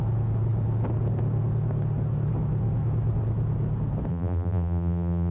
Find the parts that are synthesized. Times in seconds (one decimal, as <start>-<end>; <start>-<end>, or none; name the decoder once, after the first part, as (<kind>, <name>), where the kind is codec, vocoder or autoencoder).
4.1-5.3 (vocoder, BigVGAN v2)